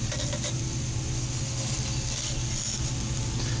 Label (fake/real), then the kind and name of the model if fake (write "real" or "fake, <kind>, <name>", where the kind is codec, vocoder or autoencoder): real